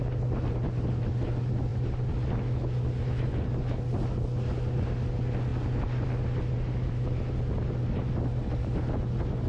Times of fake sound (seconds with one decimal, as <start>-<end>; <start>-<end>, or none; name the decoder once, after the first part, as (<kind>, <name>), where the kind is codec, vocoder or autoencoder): none